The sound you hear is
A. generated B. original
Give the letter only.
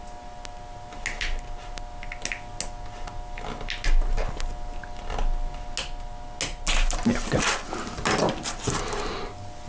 B